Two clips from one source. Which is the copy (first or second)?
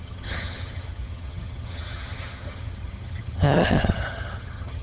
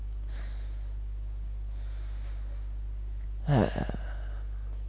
first